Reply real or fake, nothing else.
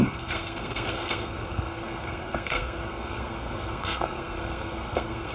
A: fake